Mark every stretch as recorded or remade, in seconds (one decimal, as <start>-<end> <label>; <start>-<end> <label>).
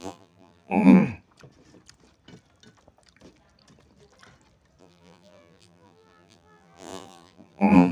0.0-1.0 remade; 1.0-4.8 recorded; 4.8-7.9 remade